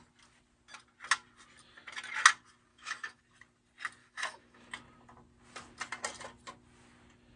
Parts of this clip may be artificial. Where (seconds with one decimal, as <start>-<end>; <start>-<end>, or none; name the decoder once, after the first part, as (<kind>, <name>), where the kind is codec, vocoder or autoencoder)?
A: 2.7-3.2 (autoencoder, DAC-VAE); 4.0-4.7